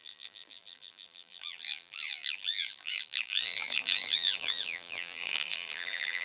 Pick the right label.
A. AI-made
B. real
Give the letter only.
A